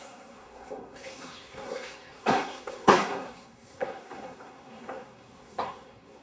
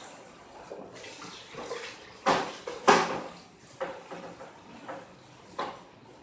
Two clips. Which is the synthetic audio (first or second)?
first